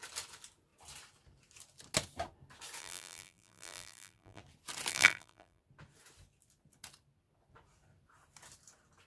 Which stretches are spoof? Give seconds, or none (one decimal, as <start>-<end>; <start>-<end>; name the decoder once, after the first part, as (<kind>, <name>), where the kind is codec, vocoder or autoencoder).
2.8-4.4 (vocoder, BigVGAN v2); 4.9-5.6